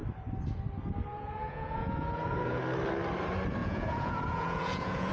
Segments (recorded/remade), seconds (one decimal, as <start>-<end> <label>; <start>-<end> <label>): 0.0-1.1 recorded; 1.1-2.6 remade; 2.6-3.6 recorded; 3.6-5.1 remade